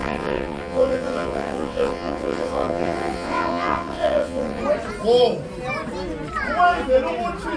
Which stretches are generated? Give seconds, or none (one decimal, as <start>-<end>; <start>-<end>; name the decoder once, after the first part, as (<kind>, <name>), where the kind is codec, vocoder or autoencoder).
0.0-4.6 (vocoder, WaveNeXt)